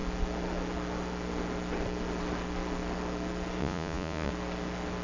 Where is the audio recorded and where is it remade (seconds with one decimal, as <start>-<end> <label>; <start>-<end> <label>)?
0.0-3.6 recorded; 3.6-4.3 remade; 4.3-5.0 recorded